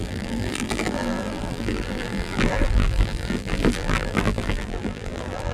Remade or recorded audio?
remade